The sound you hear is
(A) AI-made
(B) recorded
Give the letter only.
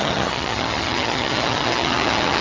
A